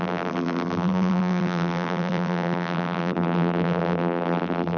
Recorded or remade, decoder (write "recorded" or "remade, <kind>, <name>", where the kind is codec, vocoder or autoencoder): remade, vocoder, BigVGAN v2